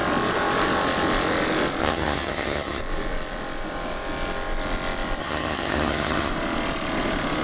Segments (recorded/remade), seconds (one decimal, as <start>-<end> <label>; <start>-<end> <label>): 0.0-1.8 recorded; 1.8-2.8 remade; 2.8-5.2 recorded; 5.2-6.3 remade; 6.3-7.4 recorded

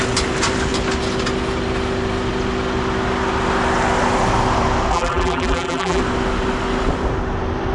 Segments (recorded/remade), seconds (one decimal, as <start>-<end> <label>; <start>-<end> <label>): 0.0-4.9 recorded; 4.9-6.0 remade; 6.0-7.7 recorded

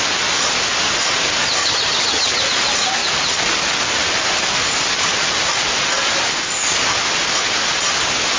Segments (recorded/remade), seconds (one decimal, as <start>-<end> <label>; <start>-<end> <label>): 0.0-1.6 recorded; 1.6-2.4 remade; 2.4-8.4 recorded

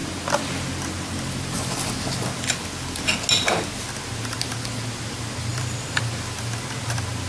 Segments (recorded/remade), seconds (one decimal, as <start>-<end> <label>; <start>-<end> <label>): 0.0-5.5 recorded; 5.5-6.0 remade; 6.0-7.3 recorded

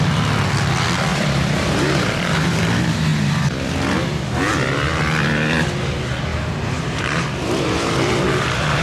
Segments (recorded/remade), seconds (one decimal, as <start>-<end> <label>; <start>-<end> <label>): 0.0-1.1 recorded; 1.1-1.9 remade; 1.9-6.3 recorded; 6.3-7.2 remade; 7.2-8.8 recorded

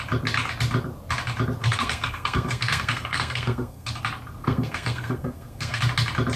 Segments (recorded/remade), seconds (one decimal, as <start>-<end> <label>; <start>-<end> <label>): 0.0-1.6 recorded; 1.6-3.9 remade; 3.9-4.4 recorded; 4.4-5.8 remade; 5.8-6.4 recorded

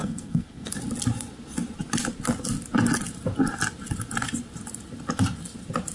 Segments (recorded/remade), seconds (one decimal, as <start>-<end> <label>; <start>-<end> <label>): 0.0-0.7 remade; 0.7-5.9 recorded

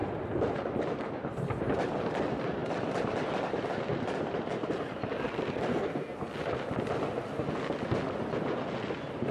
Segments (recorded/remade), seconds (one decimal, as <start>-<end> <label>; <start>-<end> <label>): 0.0-5.7 recorded; 5.7-6.2 remade; 6.2-9.3 recorded